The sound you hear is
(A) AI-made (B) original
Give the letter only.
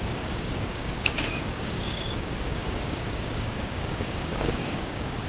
A